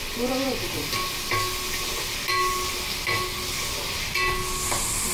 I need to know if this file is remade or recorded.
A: recorded